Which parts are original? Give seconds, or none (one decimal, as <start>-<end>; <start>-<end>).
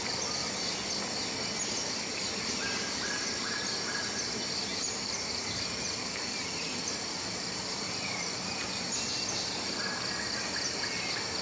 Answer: 0.0-4.7; 8.8-11.4